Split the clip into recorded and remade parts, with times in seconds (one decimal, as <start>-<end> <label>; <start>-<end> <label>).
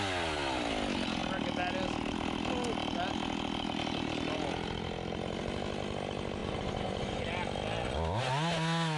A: 0.0-6.4 recorded; 6.4-7.2 remade; 7.2-9.0 recorded